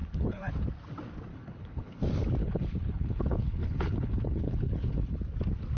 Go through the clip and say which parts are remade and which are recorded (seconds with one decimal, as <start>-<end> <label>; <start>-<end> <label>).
0.0-0.5 remade; 0.5-1.3 recorded; 1.3-2.0 remade; 2.0-2.4 recorded; 2.4-5.2 remade; 5.2-5.8 recorded